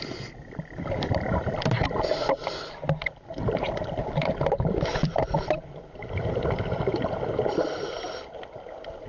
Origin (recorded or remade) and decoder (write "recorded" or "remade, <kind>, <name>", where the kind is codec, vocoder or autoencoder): remade, vocoder, BigVGAN v2